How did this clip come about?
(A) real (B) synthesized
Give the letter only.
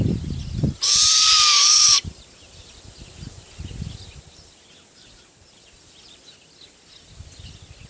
A